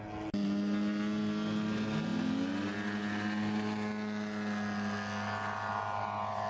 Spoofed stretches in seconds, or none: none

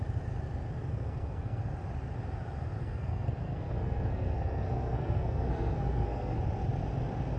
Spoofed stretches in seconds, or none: 0.9-1.6; 2.8-6.4

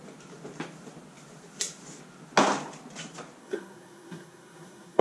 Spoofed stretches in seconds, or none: 3.4-5.0

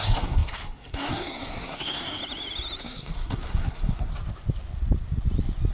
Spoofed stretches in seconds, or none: 0.0-2.2; 2.8-4.1

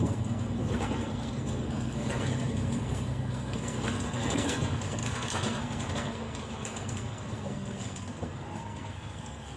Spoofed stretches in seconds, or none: 0.0-9.6